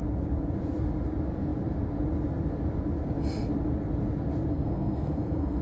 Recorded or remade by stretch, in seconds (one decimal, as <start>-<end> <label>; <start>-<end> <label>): 0.0-4.5 recorded; 4.5-5.6 remade